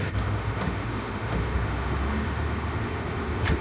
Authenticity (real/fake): fake